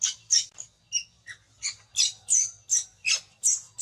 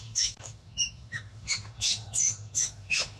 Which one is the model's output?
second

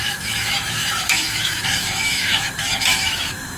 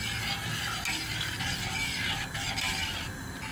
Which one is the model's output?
first